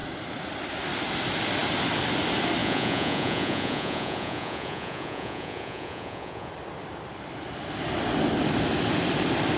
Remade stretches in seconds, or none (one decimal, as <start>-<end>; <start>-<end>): 2.6-6.5